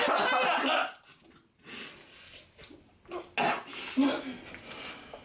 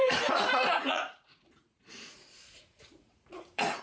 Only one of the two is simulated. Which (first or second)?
second